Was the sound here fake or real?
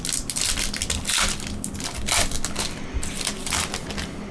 real